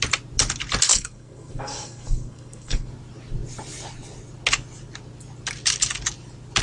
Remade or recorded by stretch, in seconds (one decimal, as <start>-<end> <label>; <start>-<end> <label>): 0.0-0.9 recorded; 0.9-2.9 remade; 2.9-6.6 recorded